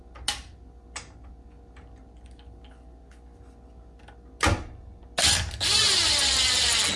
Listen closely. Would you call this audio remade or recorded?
recorded